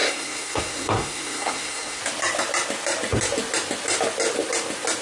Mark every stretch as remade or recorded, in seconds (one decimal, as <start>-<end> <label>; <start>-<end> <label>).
0.0-2.0 remade; 2.0-5.0 recorded